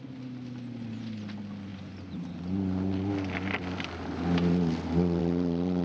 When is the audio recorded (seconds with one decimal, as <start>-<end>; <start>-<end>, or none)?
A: 0.0-5.8